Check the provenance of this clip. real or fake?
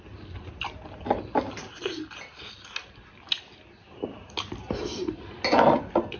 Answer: real